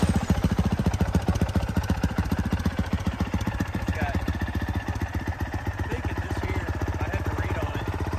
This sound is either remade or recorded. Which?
remade